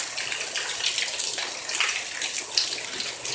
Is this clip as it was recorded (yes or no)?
yes